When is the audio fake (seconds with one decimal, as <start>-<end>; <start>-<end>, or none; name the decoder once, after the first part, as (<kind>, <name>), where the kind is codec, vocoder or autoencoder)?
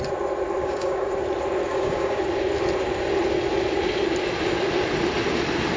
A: 0.6-1.1 (codec, DAC); 1.7-2.2